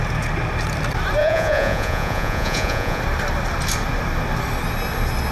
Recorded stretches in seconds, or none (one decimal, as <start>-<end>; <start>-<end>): 0.0-1.2; 3.0-5.3